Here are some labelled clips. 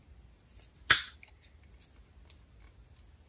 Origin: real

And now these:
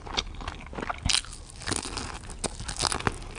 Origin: real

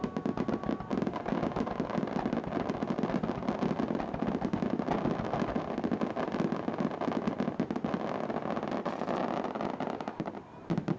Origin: real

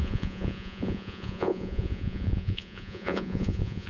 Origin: fake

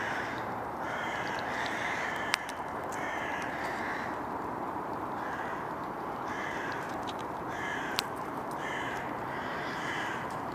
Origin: fake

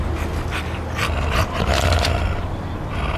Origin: real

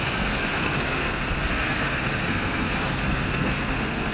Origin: fake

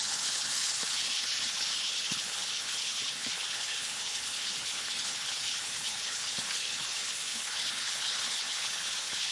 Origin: fake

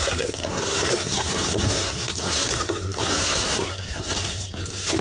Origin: fake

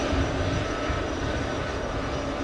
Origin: real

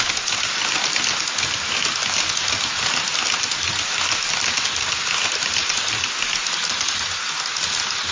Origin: real